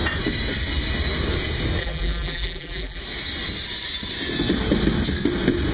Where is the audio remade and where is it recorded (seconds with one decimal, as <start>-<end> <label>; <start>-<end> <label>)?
0.0-1.8 recorded; 1.8-3.0 remade; 3.0-5.7 recorded